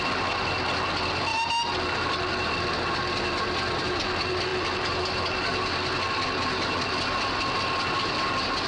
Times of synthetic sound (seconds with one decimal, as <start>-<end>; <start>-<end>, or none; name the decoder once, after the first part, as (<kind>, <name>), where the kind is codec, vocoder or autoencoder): none

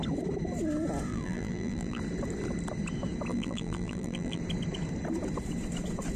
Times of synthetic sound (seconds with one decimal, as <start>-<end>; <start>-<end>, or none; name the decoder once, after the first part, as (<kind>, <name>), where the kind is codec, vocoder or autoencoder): 1.1-2.0 (vocoder, BigVGAN v2); 3.3-4.4

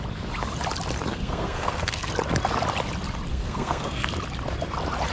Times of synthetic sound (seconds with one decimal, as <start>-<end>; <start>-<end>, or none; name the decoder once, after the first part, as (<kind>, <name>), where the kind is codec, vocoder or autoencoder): 1.1-2.1 (codec, SNAC); 3.3-4.1

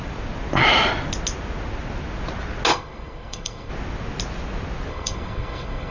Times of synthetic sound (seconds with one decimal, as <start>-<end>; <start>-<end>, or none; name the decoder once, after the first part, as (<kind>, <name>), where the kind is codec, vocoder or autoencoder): 2.7-3.7 (codec, SNAC); 4.9-5.9

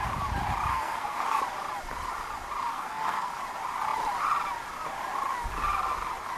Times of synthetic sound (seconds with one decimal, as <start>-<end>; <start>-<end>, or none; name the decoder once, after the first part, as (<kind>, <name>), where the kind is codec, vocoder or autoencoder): 0.7-1.4 (codec, SNAC); 2.7-3.3

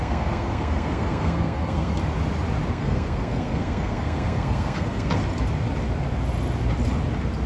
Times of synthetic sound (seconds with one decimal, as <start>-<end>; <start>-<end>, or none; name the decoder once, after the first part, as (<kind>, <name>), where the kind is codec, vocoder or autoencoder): 0.0-2.0 (codec, SNAC); 2.7-5.2

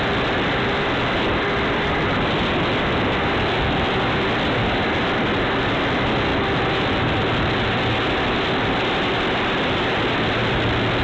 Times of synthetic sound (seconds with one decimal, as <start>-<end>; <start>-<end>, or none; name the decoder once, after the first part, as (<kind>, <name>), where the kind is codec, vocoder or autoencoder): none